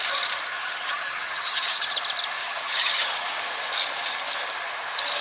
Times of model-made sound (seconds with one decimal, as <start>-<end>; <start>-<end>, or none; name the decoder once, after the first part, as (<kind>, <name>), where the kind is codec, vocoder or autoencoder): 0.6-2.0 (vocoder, HiFi-GAN); 2.4-3.1